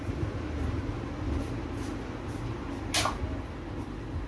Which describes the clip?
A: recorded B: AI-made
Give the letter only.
A